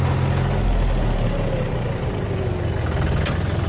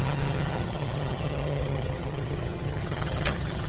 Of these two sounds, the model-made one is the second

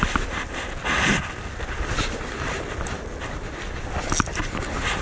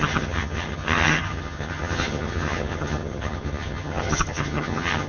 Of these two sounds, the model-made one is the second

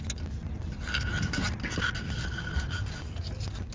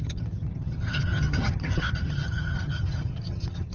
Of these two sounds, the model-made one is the second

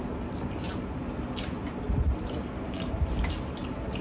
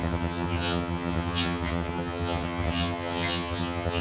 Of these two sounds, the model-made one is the second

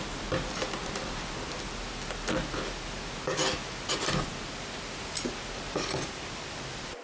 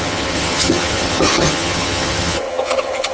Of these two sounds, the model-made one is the second